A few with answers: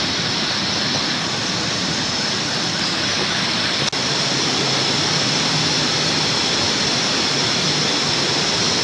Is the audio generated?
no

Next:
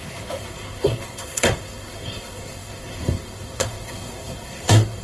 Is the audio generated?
yes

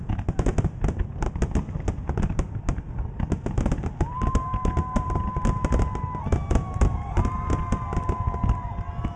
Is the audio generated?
no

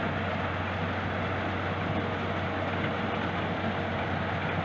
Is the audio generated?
no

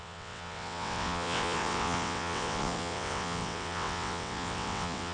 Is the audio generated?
yes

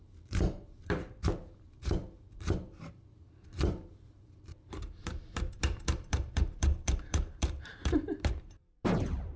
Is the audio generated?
yes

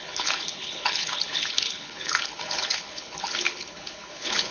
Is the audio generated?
yes